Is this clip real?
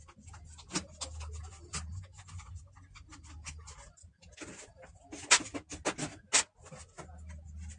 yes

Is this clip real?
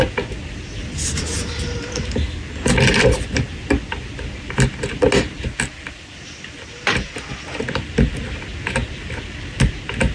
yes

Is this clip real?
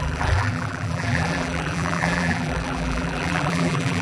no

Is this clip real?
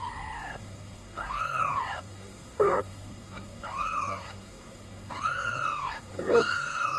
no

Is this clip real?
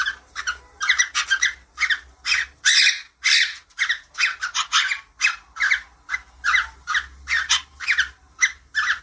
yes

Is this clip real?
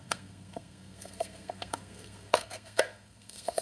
no